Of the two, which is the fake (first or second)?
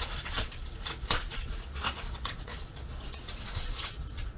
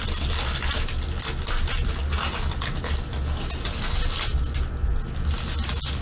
first